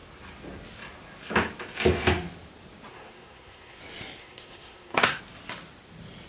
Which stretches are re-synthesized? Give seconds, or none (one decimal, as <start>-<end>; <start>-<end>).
2.9-3.8; 4.2-5.2